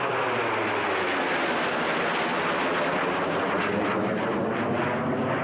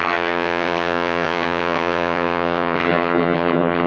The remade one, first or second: second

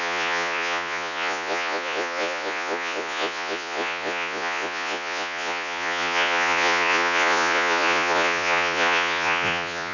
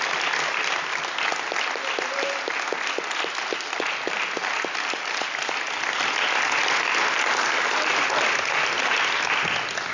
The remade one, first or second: first